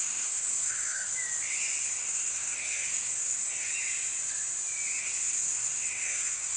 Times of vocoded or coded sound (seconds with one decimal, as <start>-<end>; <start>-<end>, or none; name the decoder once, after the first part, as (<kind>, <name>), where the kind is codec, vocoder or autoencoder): 0.0-1.1 (codec, SNAC); 1.9-3.7; 5.0-6.6

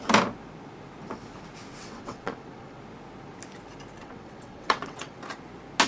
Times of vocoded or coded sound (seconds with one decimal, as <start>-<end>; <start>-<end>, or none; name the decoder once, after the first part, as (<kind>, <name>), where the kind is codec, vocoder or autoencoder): 1.8-2.8 (vocoder, WaveNeXt); 4.0-5.2

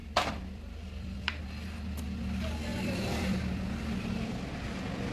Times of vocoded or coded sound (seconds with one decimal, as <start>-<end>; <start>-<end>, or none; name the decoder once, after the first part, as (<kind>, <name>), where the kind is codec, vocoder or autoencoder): 0.0-1.4 (vocoder, BigVGAN v2); 2.7-4.3

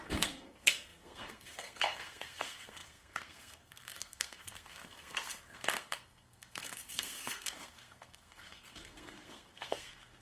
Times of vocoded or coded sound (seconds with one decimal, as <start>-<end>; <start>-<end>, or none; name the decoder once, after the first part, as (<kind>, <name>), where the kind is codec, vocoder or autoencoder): 0.0-10.2 (codec, SNAC)

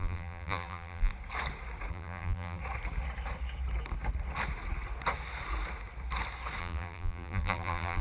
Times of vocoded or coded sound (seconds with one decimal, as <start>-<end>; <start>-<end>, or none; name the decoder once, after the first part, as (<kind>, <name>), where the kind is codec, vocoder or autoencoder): 0.0-1.1 (vocoder, BigVGAN v2); 1.9-2.6; 6.6-8.0